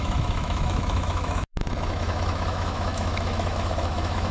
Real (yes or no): no